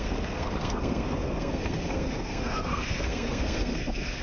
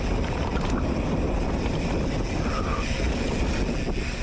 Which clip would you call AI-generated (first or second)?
first